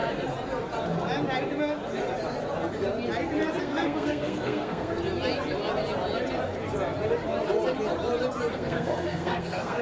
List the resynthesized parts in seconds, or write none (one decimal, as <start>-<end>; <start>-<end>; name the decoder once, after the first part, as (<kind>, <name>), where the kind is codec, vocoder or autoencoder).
3.6-5.0 (codec, SNAC); 8.5-9.8